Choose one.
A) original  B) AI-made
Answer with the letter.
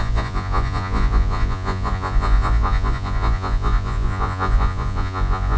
B